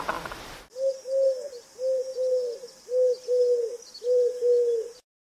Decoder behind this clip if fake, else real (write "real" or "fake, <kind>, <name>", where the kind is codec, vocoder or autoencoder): real